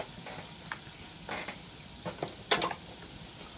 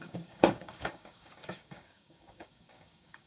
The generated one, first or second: second